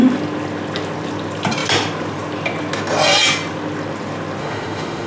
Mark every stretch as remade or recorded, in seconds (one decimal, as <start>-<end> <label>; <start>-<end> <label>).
0.0-4.4 recorded; 4.4-5.1 remade